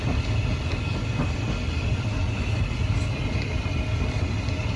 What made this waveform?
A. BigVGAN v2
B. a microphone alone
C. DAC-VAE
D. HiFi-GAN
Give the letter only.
B